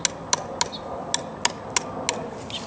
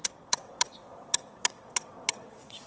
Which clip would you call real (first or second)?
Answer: first